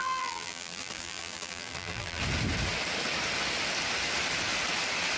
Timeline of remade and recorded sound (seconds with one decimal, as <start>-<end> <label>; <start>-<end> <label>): 0.0-2.2 remade; 2.2-5.2 recorded